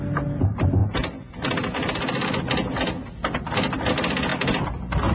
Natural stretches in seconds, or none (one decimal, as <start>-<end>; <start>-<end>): 0.0-5.1